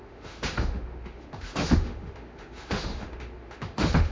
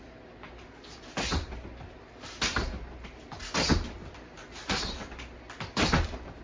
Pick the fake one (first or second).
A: first